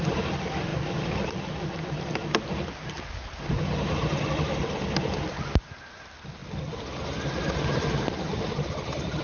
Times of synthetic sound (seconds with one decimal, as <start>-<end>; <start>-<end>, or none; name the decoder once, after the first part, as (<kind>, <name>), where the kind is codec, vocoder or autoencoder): none